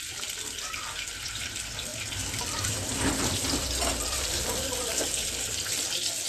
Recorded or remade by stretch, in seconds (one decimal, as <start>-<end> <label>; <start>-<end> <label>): 0.0-6.3 recorded